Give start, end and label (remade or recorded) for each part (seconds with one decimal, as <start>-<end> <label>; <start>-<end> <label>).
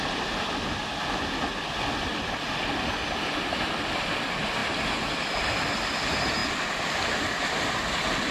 0.0-4.6 recorded; 4.6-5.4 remade; 5.4-8.3 recorded